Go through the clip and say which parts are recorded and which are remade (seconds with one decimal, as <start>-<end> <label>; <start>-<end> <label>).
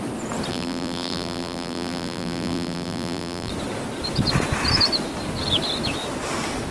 0.0-0.5 recorded; 0.5-3.5 remade; 3.5-6.7 recorded